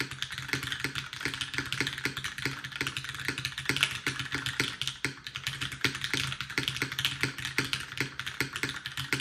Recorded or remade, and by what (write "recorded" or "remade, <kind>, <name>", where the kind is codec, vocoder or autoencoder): recorded